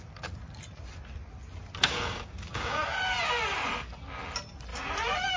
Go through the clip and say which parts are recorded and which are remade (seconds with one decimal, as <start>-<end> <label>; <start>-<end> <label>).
0.0-1.8 recorded; 1.8-2.8 remade; 2.8-5.4 recorded